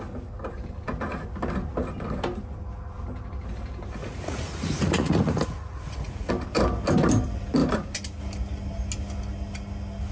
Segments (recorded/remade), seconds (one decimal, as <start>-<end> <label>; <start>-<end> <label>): 0.0-4.0 recorded; 4.0-6.3 remade; 6.3-10.1 recorded